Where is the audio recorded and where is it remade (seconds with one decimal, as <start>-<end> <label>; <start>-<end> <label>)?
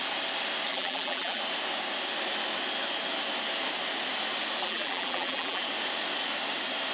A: 0.0-0.7 recorded; 0.7-1.4 remade; 1.4-4.6 recorded; 4.6-5.6 remade; 5.6-6.9 recorded